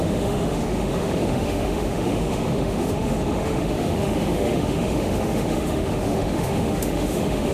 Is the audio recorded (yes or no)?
no